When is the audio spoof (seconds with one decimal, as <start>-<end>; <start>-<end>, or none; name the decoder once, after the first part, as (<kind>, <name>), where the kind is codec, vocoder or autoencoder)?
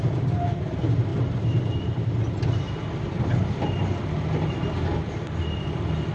none